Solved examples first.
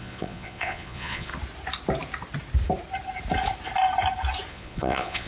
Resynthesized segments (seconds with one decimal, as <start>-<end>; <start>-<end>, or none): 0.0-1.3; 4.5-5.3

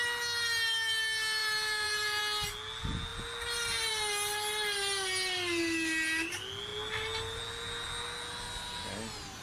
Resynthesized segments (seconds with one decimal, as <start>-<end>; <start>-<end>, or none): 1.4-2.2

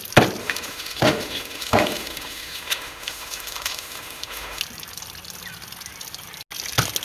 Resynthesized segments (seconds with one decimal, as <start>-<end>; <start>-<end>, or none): 0.4-4.6

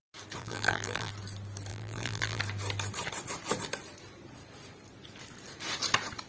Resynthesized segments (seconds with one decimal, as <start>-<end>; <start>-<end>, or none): 0.4-1.1; 1.7-2.4